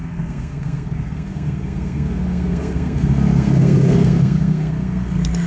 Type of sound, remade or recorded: remade